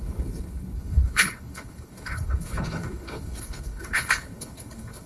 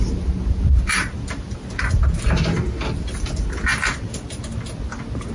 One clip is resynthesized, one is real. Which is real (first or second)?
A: second